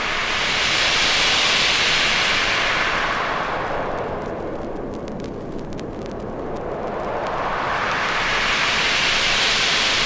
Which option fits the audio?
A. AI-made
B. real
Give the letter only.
B